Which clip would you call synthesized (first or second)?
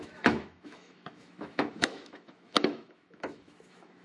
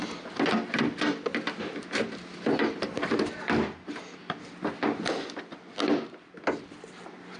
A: first